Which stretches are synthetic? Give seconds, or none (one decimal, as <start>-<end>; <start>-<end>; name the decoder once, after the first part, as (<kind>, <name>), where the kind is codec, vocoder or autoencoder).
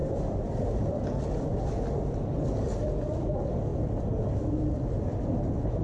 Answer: 0.0-0.9 (vocoder, BigVGAN v2)